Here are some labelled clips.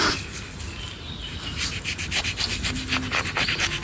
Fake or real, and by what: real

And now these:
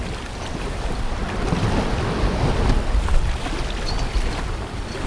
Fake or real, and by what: fake, vocoder, BigVGAN v2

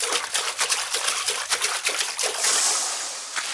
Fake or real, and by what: real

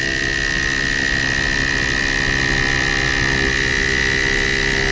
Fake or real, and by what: real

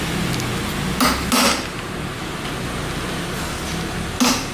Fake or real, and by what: real